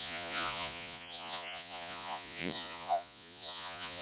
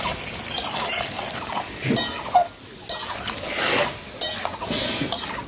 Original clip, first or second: second